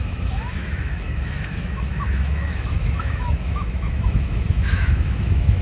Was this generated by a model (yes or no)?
yes